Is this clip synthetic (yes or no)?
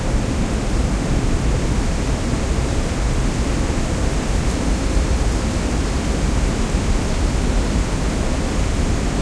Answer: yes